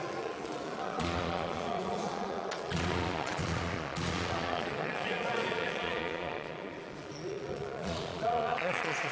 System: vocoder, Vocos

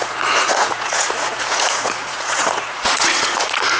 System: vocoder, Vocos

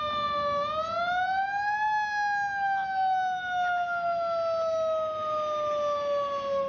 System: none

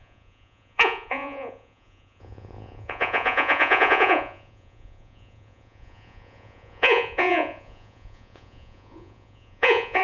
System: vocoder, Vocos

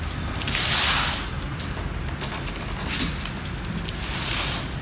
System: none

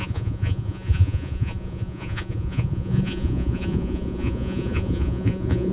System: vocoder, Vocos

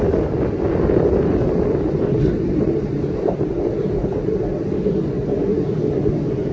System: none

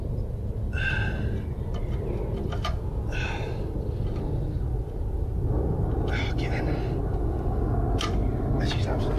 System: none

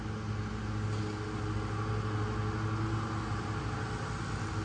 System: none